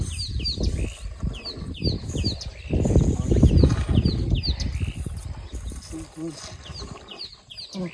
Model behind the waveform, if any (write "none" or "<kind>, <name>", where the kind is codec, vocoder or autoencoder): none